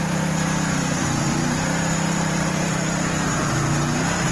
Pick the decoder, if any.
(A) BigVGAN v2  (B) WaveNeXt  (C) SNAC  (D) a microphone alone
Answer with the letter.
A